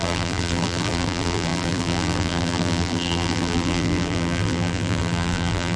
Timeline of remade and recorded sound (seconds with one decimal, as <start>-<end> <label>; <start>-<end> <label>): 0.0-5.8 remade